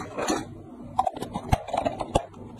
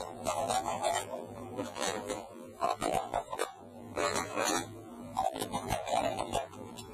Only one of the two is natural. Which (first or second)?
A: first